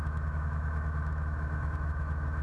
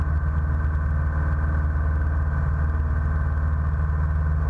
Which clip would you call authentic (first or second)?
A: second